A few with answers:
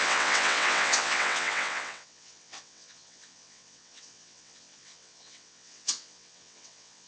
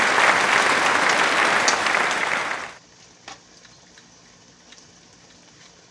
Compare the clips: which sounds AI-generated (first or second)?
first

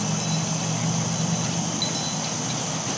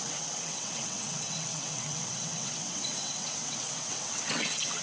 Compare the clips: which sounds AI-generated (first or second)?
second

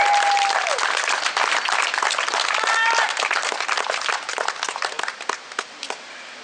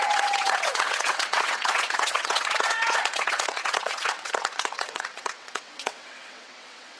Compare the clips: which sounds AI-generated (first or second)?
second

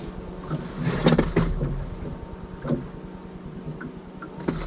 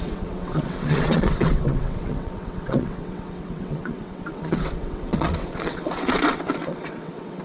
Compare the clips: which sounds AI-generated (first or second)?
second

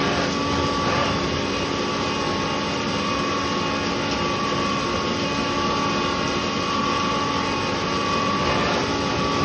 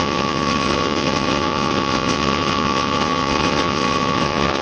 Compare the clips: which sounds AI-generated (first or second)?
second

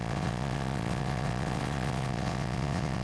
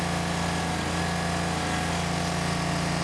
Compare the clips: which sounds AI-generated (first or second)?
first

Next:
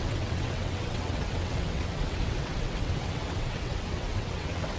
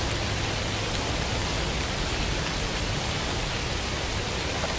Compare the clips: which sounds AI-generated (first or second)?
first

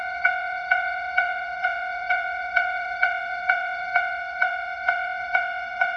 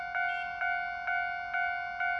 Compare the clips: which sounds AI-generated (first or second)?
first